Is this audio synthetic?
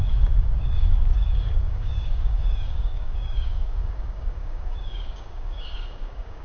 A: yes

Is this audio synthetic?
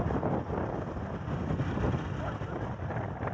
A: no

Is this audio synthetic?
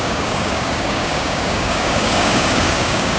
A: yes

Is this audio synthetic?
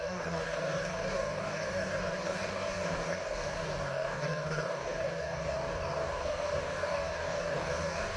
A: yes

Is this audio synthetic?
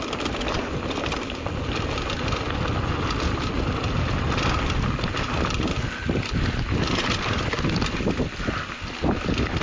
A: no